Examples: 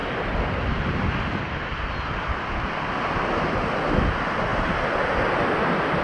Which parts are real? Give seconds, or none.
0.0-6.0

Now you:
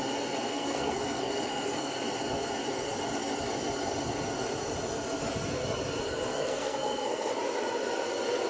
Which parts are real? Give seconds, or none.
0.0-0.5; 1.9-6.3; 7.3-8.5